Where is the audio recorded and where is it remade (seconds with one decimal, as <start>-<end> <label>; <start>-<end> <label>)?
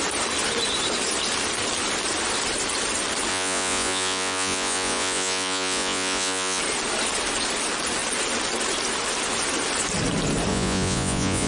0.0-3.3 recorded; 3.3-6.6 remade; 6.6-10.5 recorded; 10.5-11.5 remade